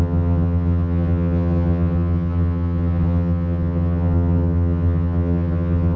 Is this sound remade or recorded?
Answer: remade